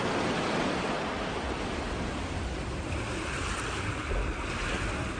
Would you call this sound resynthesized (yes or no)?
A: no